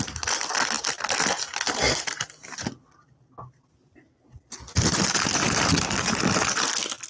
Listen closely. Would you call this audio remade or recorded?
recorded